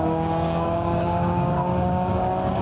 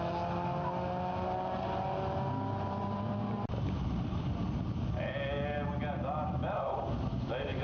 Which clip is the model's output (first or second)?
first